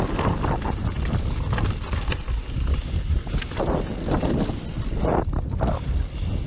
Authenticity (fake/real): real